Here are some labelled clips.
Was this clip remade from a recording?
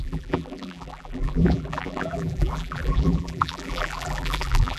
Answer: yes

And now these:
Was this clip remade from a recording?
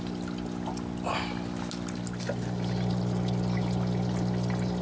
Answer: no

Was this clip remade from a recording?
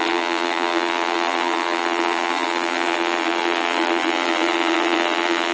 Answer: yes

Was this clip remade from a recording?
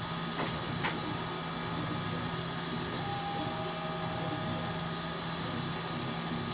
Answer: no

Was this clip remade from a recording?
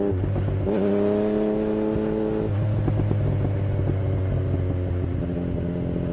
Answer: no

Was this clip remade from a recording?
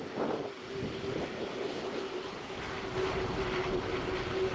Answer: yes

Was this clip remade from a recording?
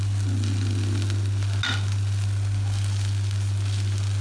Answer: no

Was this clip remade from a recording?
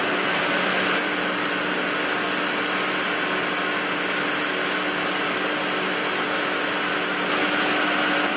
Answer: no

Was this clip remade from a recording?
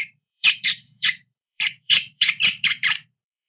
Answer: yes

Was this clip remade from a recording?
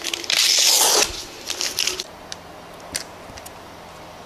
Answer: no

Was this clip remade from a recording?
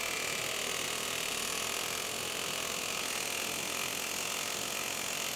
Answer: no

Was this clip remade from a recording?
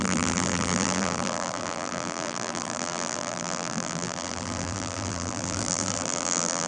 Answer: yes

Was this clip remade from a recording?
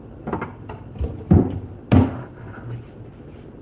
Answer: no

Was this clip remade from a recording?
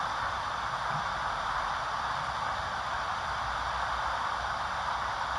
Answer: no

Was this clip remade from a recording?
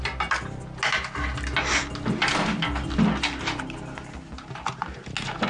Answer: no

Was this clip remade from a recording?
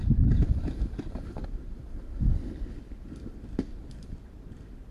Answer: no